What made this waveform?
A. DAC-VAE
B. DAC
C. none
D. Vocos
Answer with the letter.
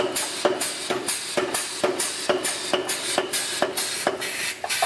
C